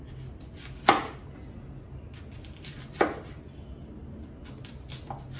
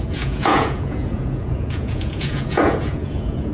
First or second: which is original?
first